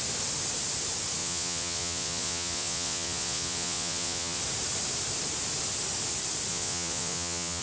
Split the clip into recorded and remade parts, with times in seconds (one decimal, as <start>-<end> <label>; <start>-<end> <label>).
0.0-1.2 recorded; 1.2-4.4 remade; 4.4-6.5 recorded; 6.5-7.6 remade